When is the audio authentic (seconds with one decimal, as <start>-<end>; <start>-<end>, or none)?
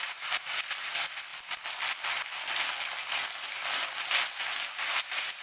0.0-5.4